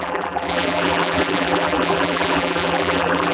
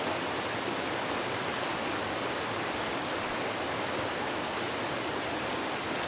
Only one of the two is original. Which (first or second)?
second